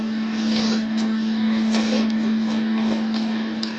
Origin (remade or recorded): remade